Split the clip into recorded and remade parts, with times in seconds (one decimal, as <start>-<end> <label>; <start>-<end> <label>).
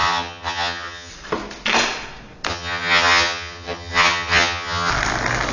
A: 0.0-1.1 remade; 1.1-2.5 recorded; 2.5-4.9 remade; 4.9-5.5 recorded